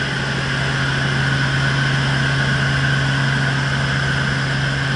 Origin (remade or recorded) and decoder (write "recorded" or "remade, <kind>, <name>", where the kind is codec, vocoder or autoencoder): recorded